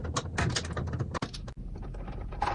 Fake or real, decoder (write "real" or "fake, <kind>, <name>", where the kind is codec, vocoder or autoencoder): real